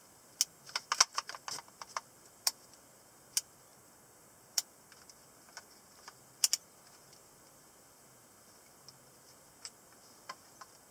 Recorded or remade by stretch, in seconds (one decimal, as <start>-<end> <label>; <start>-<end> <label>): 0.0-10.9 recorded